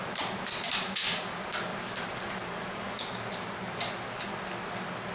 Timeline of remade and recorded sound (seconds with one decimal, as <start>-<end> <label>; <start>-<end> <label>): 0.0-1.7 recorded; 1.7-3.0 remade; 3.0-5.1 recorded